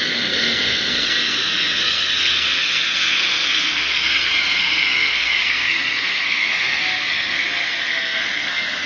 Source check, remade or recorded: remade